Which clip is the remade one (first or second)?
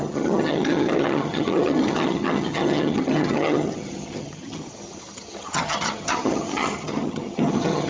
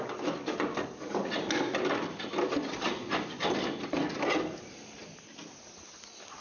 first